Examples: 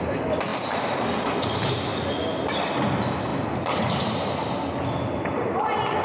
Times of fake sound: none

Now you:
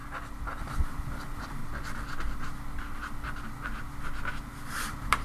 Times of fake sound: 0.6-1.6 (vocoder, BigVGAN v2); 4.7-5.2

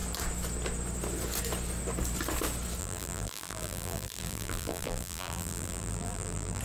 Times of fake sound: 2.8-6.6 (vocoder, BigVGAN v2)

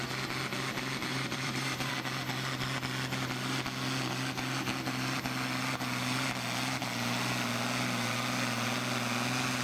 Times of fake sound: 1.1-1.9 (vocoder, BigVGAN v2)

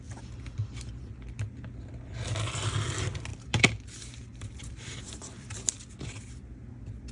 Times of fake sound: 3.3-5.6 (vocoder, BigVGAN v2)

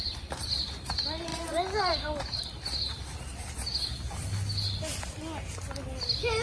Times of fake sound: 1.3-2.4 (vocoder, BigVGAN v2)